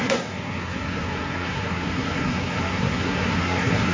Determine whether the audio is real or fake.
fake